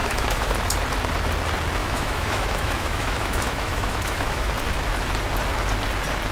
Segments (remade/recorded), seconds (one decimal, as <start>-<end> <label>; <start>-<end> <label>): 0.0-0.5 remade; 0.5-1.8 recorded; 1.8-4.5 remade; 4.5-6.3 recorded